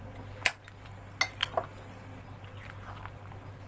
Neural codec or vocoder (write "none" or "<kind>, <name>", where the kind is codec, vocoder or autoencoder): none